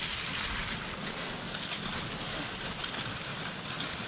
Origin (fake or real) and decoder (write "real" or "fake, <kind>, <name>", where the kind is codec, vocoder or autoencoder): real